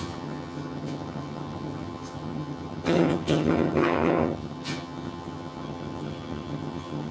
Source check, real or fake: fake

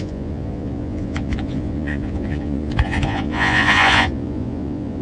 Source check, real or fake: fake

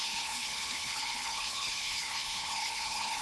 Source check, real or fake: fake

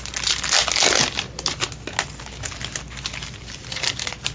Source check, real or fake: real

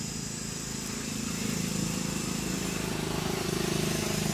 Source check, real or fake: real